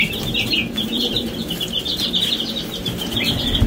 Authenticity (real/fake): fake